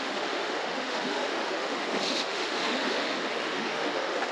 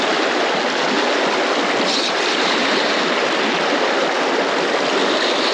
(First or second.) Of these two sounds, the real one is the second